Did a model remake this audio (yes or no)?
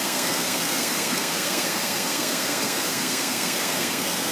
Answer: yes